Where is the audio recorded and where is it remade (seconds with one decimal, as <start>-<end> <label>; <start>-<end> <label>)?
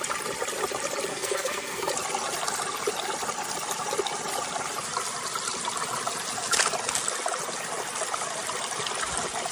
0.0-1.1 recorded; 1.1-1.9 remade; 1.9-9.5 recorded